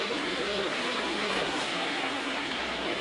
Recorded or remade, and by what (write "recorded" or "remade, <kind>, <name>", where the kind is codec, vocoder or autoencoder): remade, codec, SNAC